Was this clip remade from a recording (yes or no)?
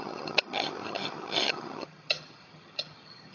yes